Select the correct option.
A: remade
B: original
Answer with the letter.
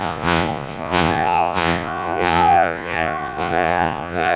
A